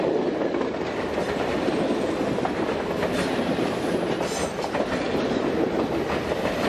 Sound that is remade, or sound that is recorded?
recorded